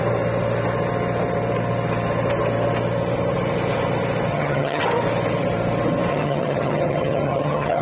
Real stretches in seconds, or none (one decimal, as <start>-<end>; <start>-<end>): 0.0-4.3; 4.8-6.1